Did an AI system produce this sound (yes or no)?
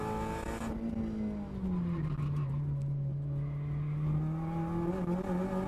no